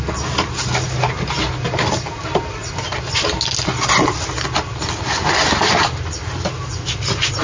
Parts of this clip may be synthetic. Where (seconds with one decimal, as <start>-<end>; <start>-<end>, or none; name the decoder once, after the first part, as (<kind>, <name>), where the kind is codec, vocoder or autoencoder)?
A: none